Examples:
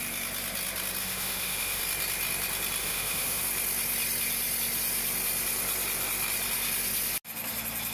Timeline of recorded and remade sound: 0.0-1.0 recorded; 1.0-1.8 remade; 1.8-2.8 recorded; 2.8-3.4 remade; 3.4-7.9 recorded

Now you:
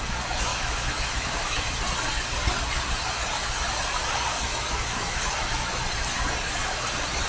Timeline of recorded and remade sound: 0.0-0.5 recorded; 0.5-1.8 remade; 1.8-4.3 recorded; 4.3-5.8 remade; 5.8-7.3 recorded

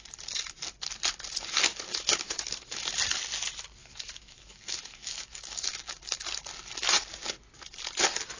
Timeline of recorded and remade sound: 0.0-1.9 recorded; 1.9-3.0 remade; 3.0-3.8 recorded; 3.8-6.0 remade; 6.0-8.4 recorded

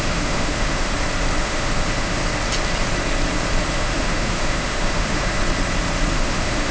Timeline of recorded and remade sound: 0.0-0.9 remade; 0.9-1.4 recorded; 1.4-2.2 remade; 2.2-3.6 recorded; 3.6-5.4 remade; 5.4-6.1 recorded; 6.1-6.7 remade